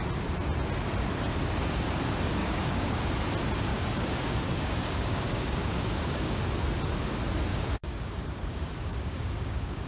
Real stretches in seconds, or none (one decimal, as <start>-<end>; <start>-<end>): 0.0-2.4; 3.1-3.7; 6.4-7.5